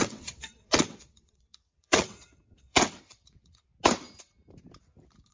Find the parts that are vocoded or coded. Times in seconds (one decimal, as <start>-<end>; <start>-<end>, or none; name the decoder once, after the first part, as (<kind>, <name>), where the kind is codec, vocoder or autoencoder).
0.0-3.7 (vocoder, WaveNeXt)